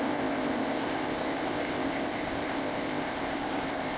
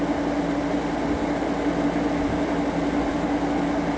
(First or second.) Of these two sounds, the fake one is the first